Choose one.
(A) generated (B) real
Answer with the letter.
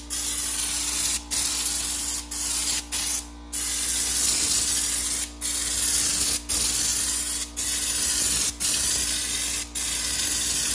B